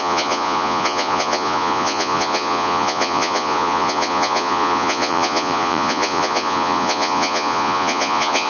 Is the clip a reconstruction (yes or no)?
yes